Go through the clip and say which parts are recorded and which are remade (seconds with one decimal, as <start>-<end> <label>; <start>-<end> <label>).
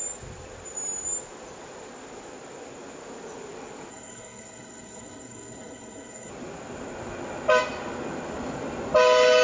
0.0-3.9 recorded; 3.9-6.3 remade; 6.3-9.4 recorded